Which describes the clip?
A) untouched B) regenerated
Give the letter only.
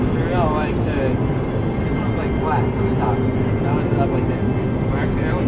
A